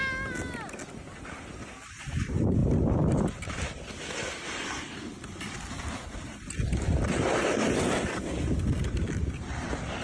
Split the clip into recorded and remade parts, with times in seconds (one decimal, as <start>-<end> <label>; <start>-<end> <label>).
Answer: 0.0-2.6 recorded; 2.6-3.3 remade; 3.3-10.0 recorded